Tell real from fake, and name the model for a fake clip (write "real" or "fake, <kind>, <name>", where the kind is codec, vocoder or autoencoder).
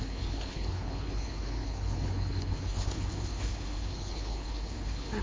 fake, codec, HILCodec